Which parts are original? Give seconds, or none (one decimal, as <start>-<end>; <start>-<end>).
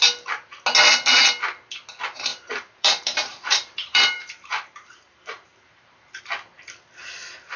0.0-2.3; 6.2-7.6